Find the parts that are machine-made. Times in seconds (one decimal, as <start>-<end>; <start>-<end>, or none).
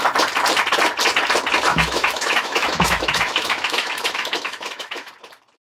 1.7-5.1